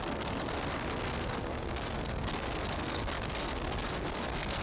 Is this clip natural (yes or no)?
no